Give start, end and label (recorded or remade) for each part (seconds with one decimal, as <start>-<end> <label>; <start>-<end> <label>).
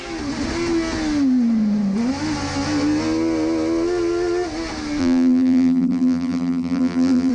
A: 0.0-5.0 recorded; 5.0-7.3 remade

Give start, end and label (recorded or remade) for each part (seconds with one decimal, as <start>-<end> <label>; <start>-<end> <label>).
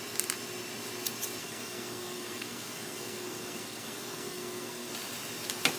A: 0.0-1.4 recorded; 1.4-4.9 remade; 4.9-5.8 recorded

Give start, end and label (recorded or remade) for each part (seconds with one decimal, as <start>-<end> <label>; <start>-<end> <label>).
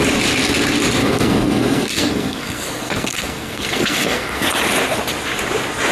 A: 0.0-1.0 recorded; 1.0-4.5 remade; 4.5-5.9 recorded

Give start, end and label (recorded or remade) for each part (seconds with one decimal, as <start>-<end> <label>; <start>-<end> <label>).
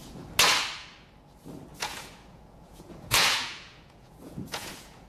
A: 0.0-1.7 recorded; 1.7-5.1 remade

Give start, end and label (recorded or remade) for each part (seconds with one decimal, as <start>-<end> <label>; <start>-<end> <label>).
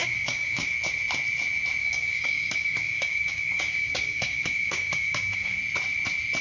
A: 0.0-0.7 remade; 0.7-1.8 recorded; 1.8-5.6 remade; 5.6-6.4 recorded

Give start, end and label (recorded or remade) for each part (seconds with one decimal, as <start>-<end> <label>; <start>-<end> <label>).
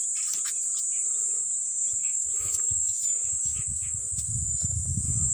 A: 0.0-2.0 recorded; 2.0-5.3 remade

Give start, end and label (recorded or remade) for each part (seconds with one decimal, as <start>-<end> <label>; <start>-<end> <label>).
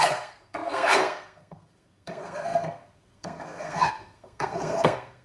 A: 0.0-5.2 remade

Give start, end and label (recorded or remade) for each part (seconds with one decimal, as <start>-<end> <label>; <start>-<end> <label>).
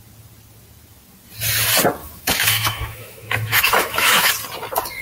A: 0.0-2.0 recorded; 2.0-4.3 remade; 4.3-5.0 recorded